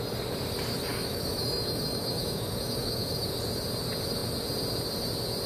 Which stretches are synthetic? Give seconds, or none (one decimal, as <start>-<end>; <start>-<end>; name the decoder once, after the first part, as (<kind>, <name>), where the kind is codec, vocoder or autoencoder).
0.9-3.3 (autoencoder, DAC-VAE)